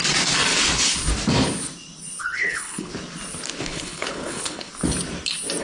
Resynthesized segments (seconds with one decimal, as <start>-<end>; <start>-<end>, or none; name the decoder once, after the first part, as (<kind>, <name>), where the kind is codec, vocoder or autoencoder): 2.2-2.9 (codec, HILCodec); 3.6-4.7